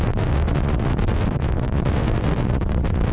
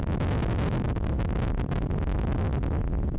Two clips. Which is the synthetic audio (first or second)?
first